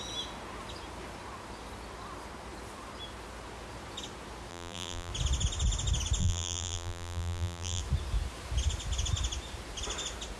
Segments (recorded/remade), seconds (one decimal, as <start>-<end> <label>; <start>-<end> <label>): 0.0-4.5 recorded; 4.5-5.1 remade; 5.1-6.2 recorded; 6.2-7.8 remade; 7.8-10.4 recorded

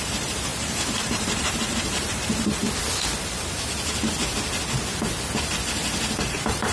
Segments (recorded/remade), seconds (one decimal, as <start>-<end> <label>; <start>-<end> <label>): 0.0-2.6 remade; 2.6-6.2 recorded; 6.2-6.7 remade

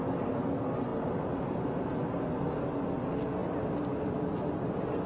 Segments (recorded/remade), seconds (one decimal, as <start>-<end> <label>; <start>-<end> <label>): 0.0-5.1 recorded

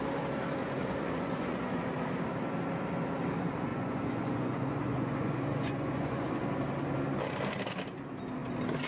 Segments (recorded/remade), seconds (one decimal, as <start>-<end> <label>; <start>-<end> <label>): 0.0-0.6 recorded; 0.6-1.8 remade; 1.8-3.7 recorded; 3.7-6.3 remade; 6.3-8.9 recorded